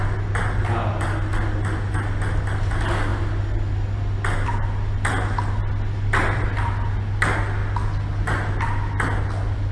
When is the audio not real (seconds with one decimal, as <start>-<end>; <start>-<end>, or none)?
none